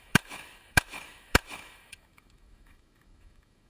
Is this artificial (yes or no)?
yes